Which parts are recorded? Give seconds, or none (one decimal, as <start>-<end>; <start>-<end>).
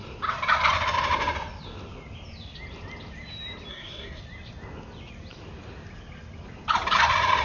0.0-3.7; 4.2-7.4